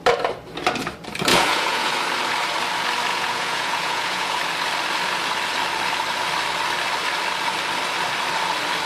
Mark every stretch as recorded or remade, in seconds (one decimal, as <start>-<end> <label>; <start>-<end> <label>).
0.0-1.3 recorded; 1.3-2.0 remade; 2.0-3.1 recorded; 3.1-4.4 remade; 4.4-8.9 recorded